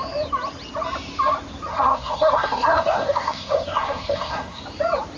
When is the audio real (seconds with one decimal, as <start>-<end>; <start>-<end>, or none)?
0.0-1.7; 4.6-5.2

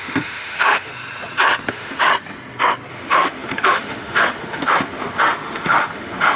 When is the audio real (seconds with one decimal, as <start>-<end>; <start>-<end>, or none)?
0.9-1.7; 2.1-2.9

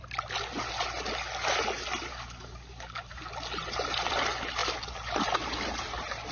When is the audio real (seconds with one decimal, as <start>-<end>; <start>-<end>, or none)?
0.0-2.1; 3.3-6.3

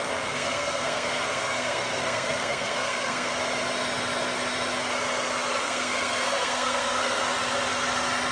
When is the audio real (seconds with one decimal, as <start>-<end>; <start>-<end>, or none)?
3.3-5.6; 7.2-8.3

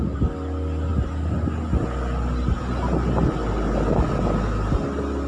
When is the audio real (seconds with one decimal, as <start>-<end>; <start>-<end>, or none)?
0.0-5.3

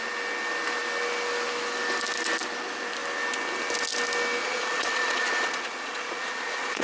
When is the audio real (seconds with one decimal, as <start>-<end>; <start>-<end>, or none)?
0.0-4.4